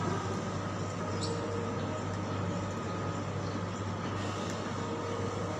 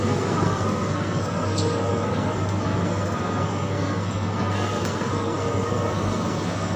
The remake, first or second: second